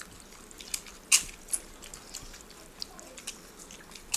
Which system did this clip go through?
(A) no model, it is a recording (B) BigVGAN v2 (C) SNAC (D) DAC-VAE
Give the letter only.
A